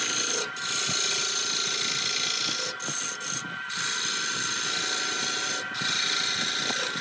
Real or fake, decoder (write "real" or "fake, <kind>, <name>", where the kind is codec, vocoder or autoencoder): real